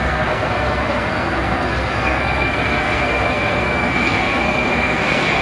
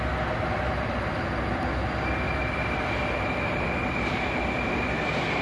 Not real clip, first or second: first